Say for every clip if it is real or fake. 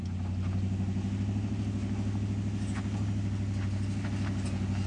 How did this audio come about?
real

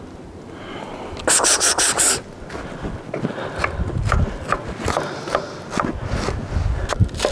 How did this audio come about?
real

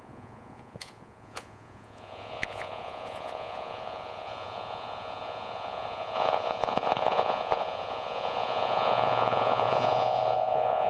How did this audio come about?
fake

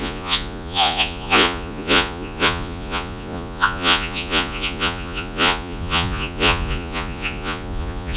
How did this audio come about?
fake